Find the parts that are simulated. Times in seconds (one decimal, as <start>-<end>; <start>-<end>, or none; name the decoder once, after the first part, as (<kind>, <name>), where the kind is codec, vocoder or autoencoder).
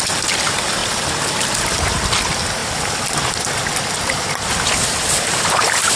none